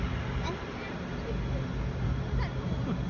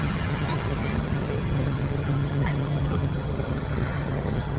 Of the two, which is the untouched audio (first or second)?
first